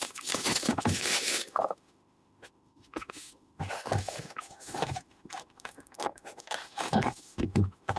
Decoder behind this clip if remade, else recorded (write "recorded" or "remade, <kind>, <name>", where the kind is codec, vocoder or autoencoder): remade, autoencoder, DAC-VAE